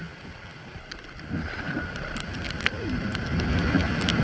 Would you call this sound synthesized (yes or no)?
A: no